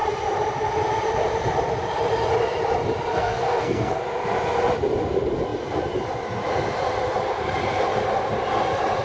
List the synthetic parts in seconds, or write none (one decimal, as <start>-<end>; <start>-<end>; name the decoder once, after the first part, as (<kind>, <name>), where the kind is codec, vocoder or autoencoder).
3.1-4.0 (codec, SNAC)